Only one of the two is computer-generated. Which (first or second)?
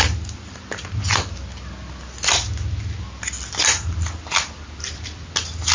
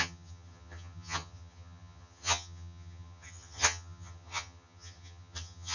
second